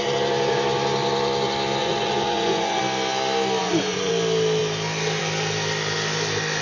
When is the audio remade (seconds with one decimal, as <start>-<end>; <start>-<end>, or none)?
1.8-2.8; 3.6-4.1